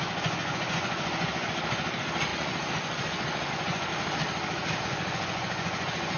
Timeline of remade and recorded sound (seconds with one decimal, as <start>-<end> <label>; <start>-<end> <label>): 0.0-3.9 remade; 3.9-4.8 recorded; 4.8-6.2 remade